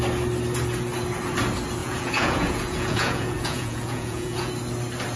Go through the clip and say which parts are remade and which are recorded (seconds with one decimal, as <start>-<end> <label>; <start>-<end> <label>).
0.0-1.8 recorded; 1.8-4.5 remade; 4.5-5.2 recorded